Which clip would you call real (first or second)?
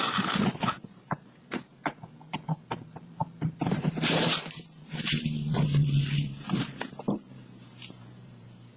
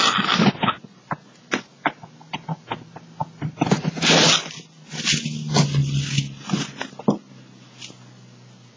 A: second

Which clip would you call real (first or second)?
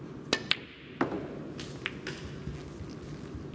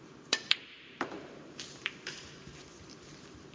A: first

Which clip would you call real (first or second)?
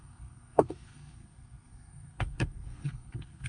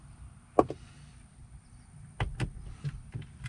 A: second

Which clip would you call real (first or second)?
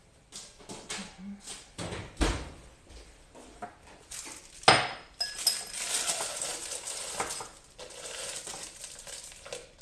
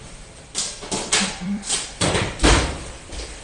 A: first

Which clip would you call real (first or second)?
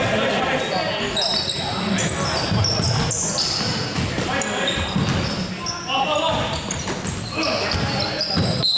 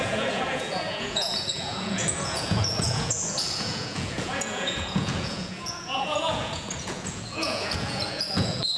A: first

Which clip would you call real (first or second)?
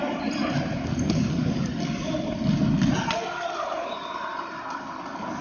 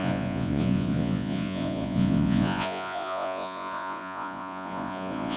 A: first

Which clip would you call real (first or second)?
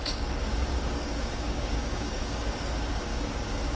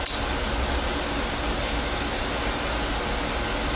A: second